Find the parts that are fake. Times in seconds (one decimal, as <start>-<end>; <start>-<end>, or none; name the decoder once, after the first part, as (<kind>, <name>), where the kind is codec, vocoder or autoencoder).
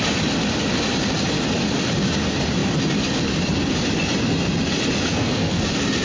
5.1-5.6 (codec, SNAC)